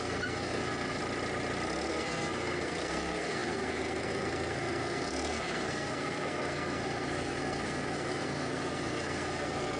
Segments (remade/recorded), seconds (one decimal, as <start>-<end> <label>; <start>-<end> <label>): 0.0-1.0 remade; 1.0-1.9 recorded; 1.9-9.8 remade